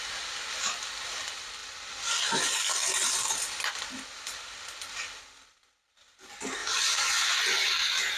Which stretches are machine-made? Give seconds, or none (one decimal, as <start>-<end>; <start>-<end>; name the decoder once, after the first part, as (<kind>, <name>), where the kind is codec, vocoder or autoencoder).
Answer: 6.6-7.4 (vocoder, BigVGAN v2)